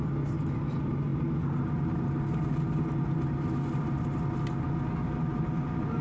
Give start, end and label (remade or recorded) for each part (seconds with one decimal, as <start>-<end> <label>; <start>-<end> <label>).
0.0-6.0 recorded